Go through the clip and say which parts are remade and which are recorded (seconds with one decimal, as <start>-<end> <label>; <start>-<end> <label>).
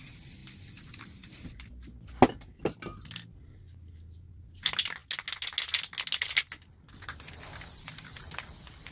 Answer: 0.0-0.4 recorded; 0.4-1.7 remade; 1.7-8.9 recorded